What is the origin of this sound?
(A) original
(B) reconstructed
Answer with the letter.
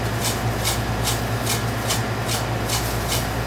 A